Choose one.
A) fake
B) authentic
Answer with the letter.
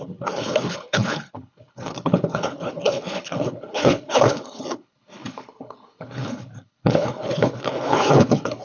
A